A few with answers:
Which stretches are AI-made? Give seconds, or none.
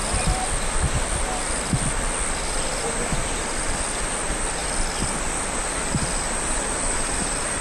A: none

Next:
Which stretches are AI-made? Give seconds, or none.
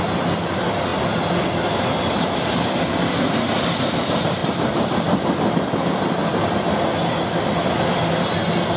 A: 4.4-5.8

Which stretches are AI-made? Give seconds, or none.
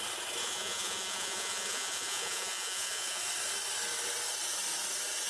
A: 0.4-3.2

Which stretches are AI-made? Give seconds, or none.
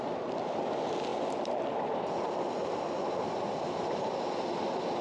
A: none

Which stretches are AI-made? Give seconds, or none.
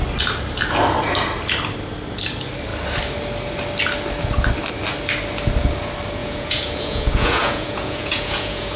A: 6.2-8.8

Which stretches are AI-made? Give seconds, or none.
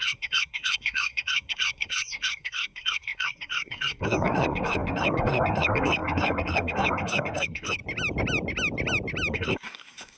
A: 0.0-7.8; 9.3-10.2